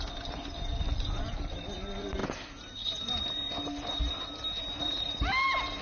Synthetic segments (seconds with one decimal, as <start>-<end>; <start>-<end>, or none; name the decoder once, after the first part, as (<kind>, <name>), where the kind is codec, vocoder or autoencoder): none